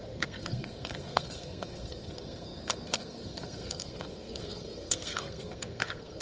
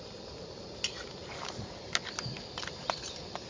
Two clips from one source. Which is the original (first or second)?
second